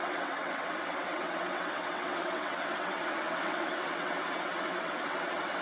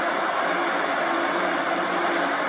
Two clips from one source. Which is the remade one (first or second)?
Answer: first